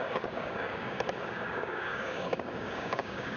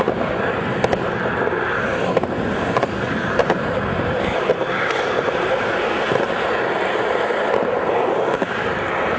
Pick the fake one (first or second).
first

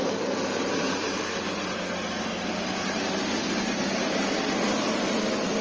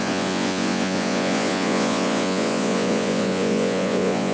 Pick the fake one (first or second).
second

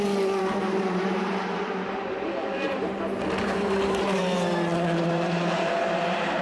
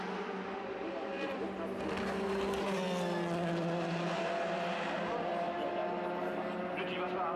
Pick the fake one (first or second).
first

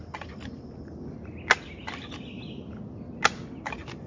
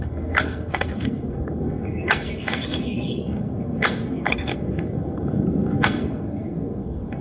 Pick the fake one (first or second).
second